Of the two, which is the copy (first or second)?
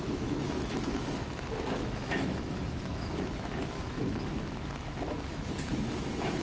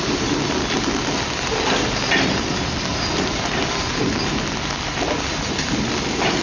first